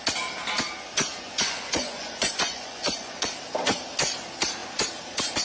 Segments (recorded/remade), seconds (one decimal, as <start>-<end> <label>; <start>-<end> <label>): 0.0-1.1 recorded; 1.1-3.3 remade; 3.3-5.4 recorded

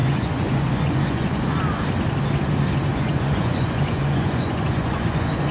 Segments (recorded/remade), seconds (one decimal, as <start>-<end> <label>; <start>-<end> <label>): 0.0-1.6 remade; 1.6-2.9 recorded; 2.9-5.5 remade

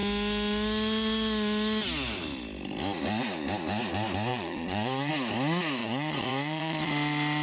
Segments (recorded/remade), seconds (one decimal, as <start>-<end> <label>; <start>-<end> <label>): 0.0-4.3 recorded; 4.3-5.1 remade; 5.1-5.8 recorded; 5.8-6.9 remade; 6.9-7.4 recorded

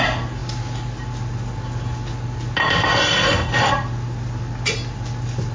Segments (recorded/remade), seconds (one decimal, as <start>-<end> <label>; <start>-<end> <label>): 0.0-5.5 recorded

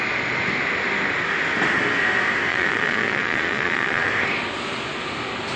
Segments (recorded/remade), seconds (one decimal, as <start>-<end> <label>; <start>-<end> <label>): 0.0-2.5 recorded; 2.5-4.1 remade; 4.1-5.6 recorded

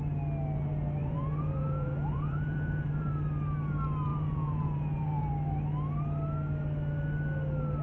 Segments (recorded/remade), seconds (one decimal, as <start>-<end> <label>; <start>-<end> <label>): 0.0-1.0 recorded; 1.0-3.1 remade; 3.1-4.1 recorded; 4.1-5.3 remade; 5.3-7.8 recorded